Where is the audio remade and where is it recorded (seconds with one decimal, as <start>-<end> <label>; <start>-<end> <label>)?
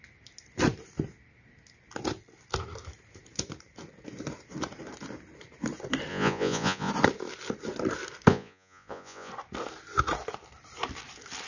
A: 0.0-6.1 recorded; 6.1-6.9 remade; 6.9-8.3 recorded; 8.3-9.3 remade; 9.3-11.5 recorded